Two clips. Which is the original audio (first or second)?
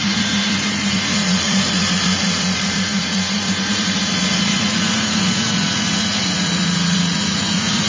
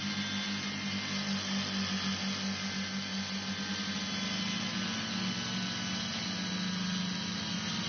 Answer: second